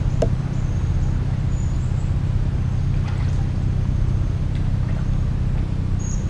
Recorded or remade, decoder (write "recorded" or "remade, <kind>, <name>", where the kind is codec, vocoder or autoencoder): recorded